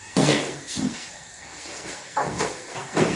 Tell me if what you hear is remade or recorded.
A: remade